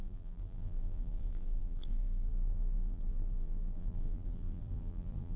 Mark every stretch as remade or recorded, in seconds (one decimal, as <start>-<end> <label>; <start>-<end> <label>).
0.0-5.4 remade